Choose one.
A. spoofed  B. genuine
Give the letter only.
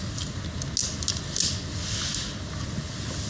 B